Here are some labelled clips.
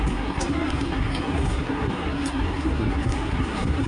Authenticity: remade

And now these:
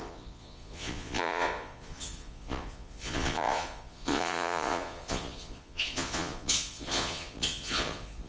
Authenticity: remade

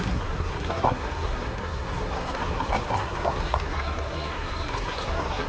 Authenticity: remade